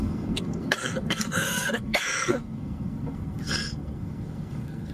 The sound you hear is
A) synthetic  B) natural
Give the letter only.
A